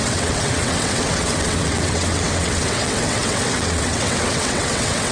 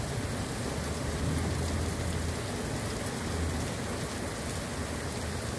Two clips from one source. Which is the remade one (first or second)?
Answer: first